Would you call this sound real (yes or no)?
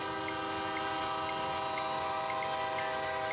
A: yes